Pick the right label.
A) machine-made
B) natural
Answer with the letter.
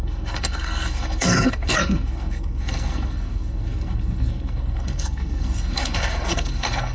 A